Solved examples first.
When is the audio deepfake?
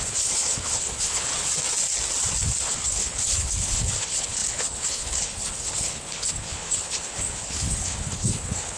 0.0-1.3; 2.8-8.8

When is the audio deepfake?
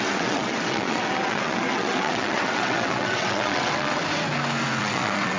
0.0-4.0; 4.8-5.4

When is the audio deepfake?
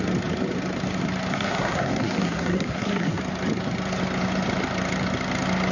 1.3-3.2